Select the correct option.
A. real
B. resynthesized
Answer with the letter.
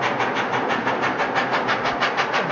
A